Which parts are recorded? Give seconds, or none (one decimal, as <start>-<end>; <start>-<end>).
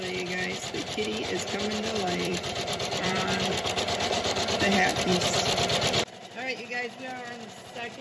0.0-0.8; 4.6-8.0